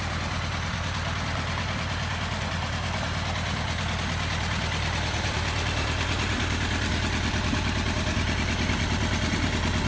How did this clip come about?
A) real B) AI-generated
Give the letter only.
A